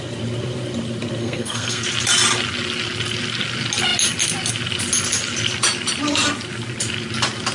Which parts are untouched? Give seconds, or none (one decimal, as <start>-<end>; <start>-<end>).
0.0-1.2; 1.8-7.5